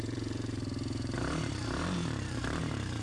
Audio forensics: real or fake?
fake